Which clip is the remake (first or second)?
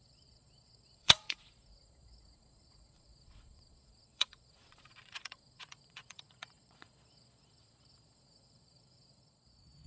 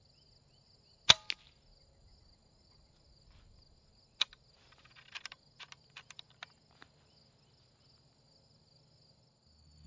first